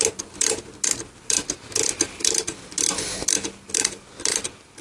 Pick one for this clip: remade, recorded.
recorded